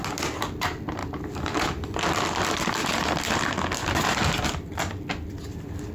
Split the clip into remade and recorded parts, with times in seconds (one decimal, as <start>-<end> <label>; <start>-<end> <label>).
0.0-1.0 recorded; 1.0-3.2 remade; 3.2-5.9 recorded